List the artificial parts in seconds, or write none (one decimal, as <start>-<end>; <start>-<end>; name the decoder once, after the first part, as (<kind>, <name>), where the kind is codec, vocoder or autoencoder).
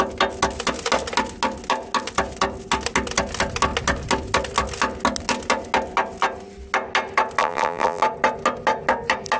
7.4-8.0 (vocoder, BigVGAN v2)